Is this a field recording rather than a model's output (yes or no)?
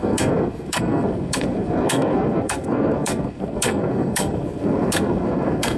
no